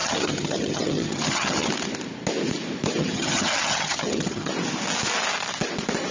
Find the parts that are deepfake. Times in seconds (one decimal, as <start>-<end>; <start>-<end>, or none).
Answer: 0.0-1.7; 3.0-4.5